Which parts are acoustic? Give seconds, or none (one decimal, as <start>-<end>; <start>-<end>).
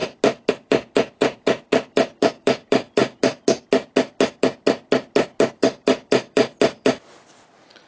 0.0-0.5; 3.0-5.5; 6.4-7.3